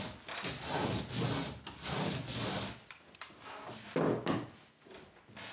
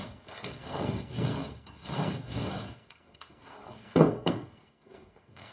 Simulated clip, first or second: second